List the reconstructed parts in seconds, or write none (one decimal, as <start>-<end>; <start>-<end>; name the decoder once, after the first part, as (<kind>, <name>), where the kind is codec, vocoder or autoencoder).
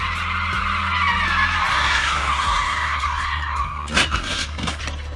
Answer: 1.7-4.8 (codec, SNAC)